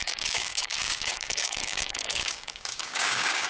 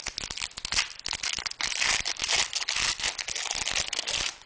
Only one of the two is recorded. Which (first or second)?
second